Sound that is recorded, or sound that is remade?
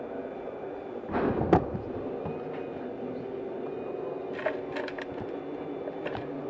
recorded